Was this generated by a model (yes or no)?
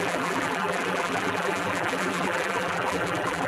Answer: yes